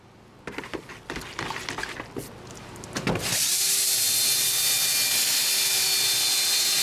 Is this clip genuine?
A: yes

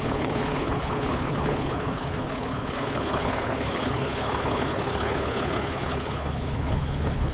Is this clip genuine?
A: no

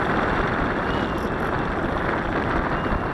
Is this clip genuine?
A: yes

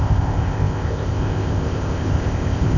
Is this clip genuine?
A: no